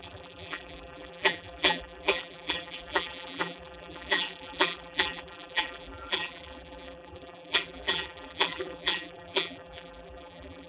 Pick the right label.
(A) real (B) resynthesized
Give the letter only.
B